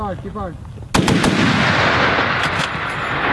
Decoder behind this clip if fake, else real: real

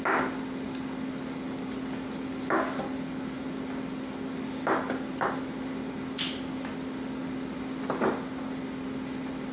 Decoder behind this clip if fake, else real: real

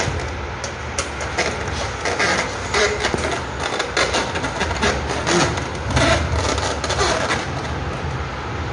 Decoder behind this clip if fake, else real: real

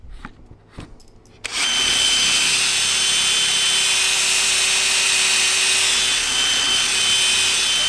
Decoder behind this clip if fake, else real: real